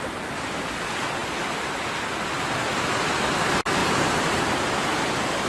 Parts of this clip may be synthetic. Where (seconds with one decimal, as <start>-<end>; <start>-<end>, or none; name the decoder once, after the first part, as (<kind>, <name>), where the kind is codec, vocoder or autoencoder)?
3.8-4.3 (vocoder, BigVGAN v2)